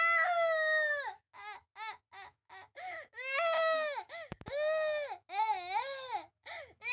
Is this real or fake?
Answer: fake